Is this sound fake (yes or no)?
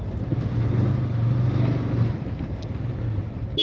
no